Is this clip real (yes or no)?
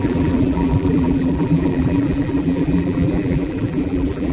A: no